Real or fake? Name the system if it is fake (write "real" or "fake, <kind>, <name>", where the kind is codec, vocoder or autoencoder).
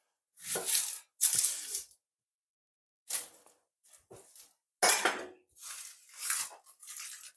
real